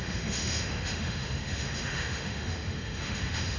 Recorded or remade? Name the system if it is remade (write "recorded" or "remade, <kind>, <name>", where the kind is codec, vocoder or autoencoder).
remade, autoencoder, DAC-VAE